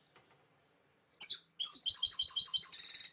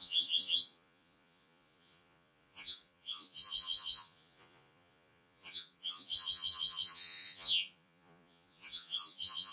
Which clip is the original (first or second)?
first